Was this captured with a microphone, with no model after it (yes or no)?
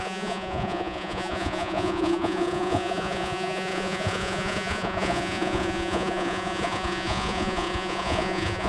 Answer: no